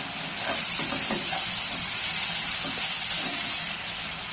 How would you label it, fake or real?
real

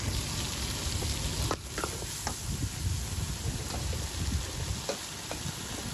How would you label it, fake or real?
real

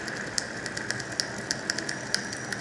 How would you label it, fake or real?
real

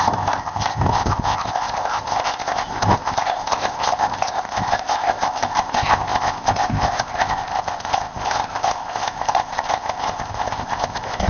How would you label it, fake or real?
fake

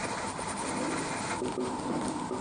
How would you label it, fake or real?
real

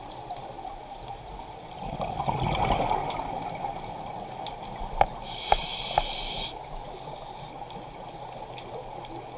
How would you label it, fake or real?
real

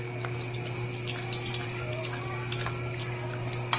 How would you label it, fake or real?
real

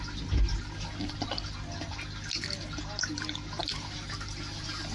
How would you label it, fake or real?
real